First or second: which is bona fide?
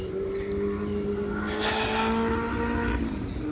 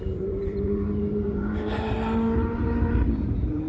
first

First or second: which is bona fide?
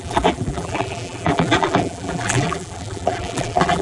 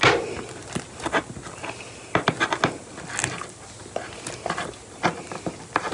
second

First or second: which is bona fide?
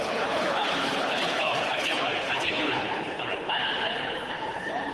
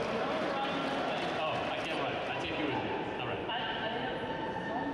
second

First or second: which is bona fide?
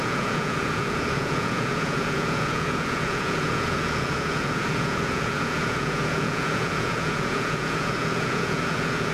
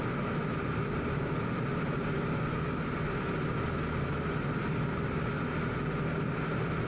second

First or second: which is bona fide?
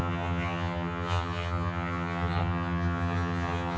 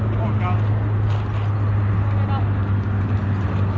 second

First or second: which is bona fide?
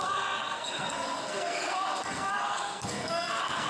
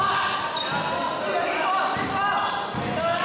second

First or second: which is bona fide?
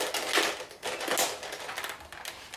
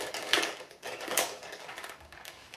first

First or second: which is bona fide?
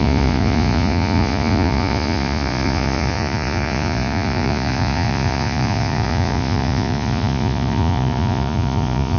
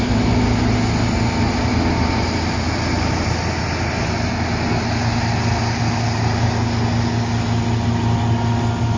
second